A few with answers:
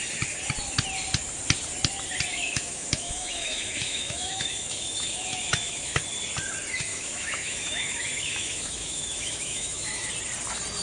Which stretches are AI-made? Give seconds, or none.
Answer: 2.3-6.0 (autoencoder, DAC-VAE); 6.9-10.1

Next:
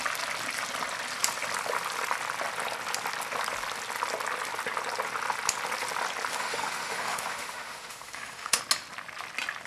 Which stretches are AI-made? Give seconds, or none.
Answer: 6.3-8.6 (autoencoder, DAC-VAE)

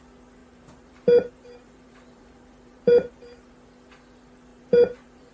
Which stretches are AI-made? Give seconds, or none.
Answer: 0.4-3.5 (vocoder, BigVGAN v2); 4.5-5.3